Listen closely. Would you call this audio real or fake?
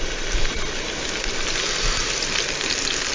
real